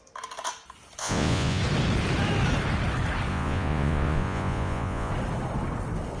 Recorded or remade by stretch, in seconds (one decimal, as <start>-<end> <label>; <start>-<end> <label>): 0.0-1.0 recorded; 1.0-1.6 remade; 1.6-3.3 recorded; 3.3-5.1 remade; 5.1-6.2 recorded